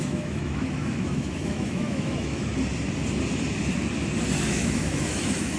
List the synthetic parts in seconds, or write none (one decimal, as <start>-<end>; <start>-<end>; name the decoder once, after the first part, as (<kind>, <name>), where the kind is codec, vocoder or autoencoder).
0.0-2.5 (autoencoder, DAC-VAE); 4.5-5.6